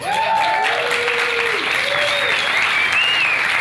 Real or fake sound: real